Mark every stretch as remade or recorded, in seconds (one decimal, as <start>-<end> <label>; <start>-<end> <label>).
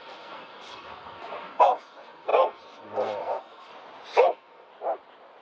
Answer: 0.0-3.7 remade; 3.7-4.2 recorded; 4.2-4.7 remade; 4.7-5.4 recorded